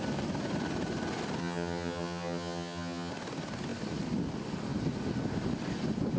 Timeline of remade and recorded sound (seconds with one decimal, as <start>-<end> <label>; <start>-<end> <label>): 0.0-1.4 recorded; 1.4-3.1 remade; 3.1-6.2 recorded